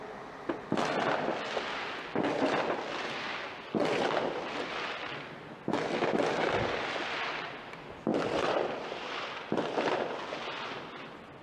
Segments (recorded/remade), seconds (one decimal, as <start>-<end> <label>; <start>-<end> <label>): 0.0-3.8 recorded; 3.8-4.6 remade; 4.6-8.1 recorded; 8.1-10.0 remade; 10.0-11.4 recorded